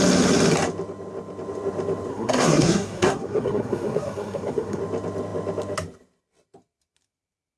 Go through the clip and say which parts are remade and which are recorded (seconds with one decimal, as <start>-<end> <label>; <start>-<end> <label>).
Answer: 0.0-2.1 recorded; 2.1-4.8 remade; 4.8-7.6 recorded